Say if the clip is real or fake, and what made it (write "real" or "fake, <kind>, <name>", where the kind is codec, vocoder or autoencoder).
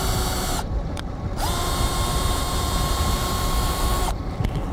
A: fake, vocoder, BigVGAN v2